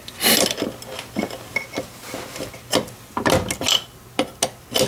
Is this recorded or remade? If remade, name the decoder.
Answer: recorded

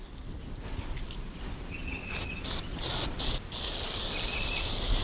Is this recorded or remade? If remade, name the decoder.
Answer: recorded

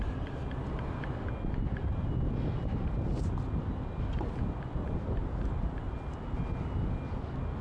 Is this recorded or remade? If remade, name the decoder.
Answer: recorded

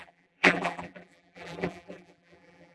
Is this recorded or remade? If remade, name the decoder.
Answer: remade, vocoder, BigVGAN v2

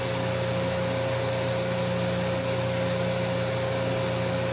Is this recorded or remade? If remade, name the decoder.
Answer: recorded